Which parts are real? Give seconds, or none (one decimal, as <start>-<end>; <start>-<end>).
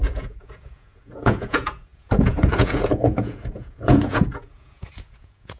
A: none